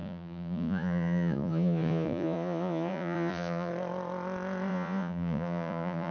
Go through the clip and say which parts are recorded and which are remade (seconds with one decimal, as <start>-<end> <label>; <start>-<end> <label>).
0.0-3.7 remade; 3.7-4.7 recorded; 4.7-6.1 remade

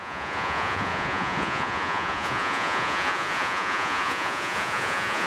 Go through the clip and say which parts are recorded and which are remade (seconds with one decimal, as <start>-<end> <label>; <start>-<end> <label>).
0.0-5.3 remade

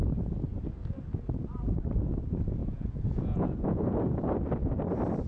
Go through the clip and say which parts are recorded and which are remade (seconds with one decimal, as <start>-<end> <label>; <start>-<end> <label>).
0.0-2.6 recorded; 2.6-3.8 remade; 3.8-5.3 recorded